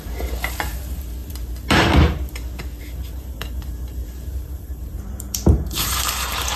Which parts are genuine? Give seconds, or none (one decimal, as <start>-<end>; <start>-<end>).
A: 1.2-2.8